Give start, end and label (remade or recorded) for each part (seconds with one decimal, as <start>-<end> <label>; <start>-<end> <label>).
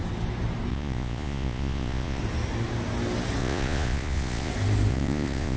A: 0.0-0.7 recorded; 0.7-2.2 remade; 2.2-3.4 recorded; 3.4-4.5 remade; 4.5-4.9 recorded; 4.9-5.6 remade